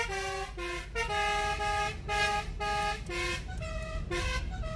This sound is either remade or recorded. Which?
recorded